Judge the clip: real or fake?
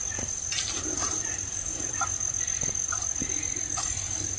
real